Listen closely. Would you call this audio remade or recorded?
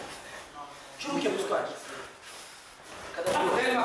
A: recorded